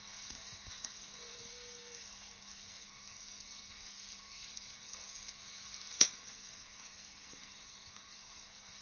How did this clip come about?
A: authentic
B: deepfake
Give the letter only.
B